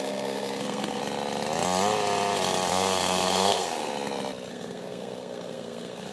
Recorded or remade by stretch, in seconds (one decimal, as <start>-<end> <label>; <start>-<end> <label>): 0.0-1.0 remade; 1.0-2.7 recorded; 2.7-3.9 remade; 3.9-4.5 recorded; 4.5-6.1 remade